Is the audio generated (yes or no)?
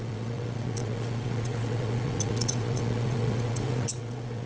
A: yes